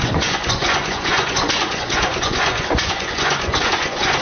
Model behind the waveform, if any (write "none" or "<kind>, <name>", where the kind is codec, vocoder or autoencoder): vocoder, Vocos